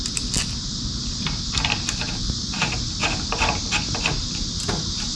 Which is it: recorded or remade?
recorded